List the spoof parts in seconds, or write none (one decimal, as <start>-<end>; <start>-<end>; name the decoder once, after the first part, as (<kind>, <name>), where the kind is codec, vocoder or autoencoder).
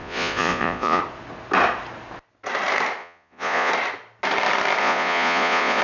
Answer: 0.0-1.0 (vocoder, Vocos); 3.0-3.7; 4.8-5.8